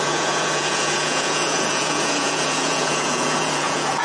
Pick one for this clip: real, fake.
fake